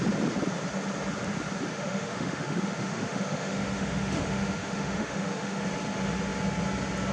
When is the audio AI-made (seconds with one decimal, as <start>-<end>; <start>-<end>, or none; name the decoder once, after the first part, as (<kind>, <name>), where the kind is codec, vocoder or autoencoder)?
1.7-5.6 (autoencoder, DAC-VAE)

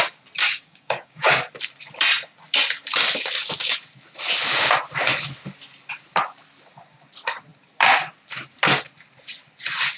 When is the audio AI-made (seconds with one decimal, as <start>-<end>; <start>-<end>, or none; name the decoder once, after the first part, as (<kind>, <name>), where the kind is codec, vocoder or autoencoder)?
0.4-1.3 (codec, DAC)

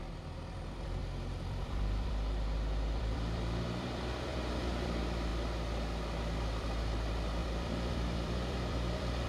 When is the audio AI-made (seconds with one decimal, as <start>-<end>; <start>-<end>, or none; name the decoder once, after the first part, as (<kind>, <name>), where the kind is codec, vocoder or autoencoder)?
0.0-5.3 (vocoder, BigVGAN v2); 6.4-9.3

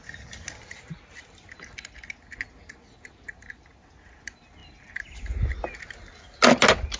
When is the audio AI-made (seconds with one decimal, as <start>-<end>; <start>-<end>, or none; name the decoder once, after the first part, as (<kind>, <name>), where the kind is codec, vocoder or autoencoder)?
none

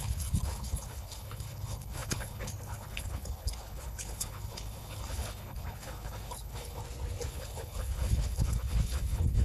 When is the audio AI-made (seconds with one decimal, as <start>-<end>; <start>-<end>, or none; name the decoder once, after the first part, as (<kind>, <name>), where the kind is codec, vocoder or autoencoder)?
0.0-6.8 (codec, HILCodec); 7.3-9.4